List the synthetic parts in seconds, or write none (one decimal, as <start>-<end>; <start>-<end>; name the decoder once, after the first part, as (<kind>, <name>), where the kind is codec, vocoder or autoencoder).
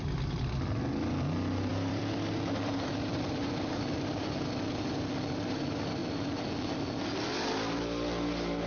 1.7-4.4 (vocoder, BigVGAN v2)